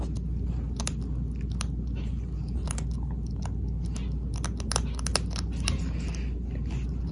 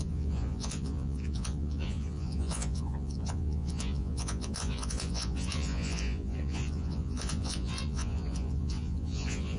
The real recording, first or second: first